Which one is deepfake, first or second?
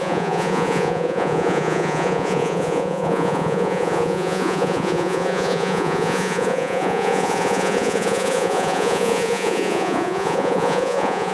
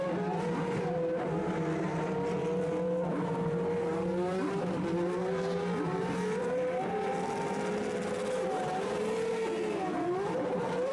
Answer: first